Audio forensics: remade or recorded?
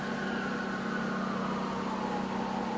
recorded